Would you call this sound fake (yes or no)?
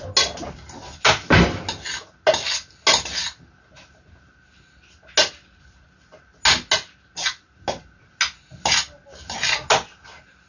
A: no